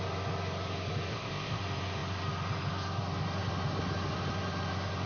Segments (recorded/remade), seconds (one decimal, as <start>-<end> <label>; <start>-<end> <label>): 0.0-1.1 recorded; 1.1-1.6 remade; 1.6-5.1 recorded